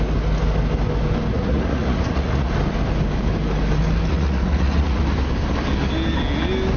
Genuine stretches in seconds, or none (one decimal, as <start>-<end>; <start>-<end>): 0.0-1.3; 2.5-4.1; 5.0-6.8